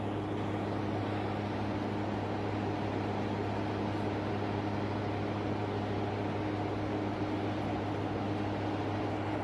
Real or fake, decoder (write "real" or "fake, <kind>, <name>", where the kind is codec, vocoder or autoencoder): real